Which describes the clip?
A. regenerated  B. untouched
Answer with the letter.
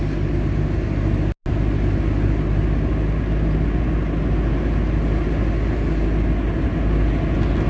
B